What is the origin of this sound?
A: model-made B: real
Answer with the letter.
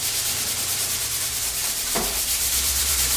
A